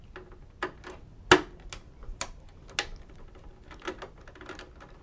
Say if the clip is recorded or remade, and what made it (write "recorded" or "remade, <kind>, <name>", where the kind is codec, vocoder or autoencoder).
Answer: recorded